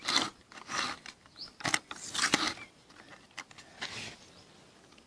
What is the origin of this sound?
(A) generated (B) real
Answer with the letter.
B